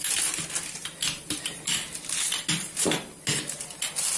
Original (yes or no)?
yes